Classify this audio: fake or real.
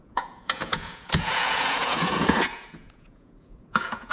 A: fake